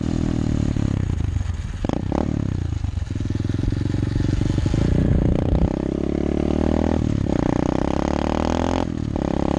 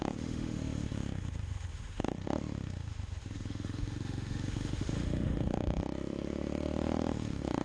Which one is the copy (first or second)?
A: second